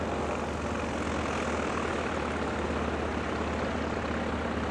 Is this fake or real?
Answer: real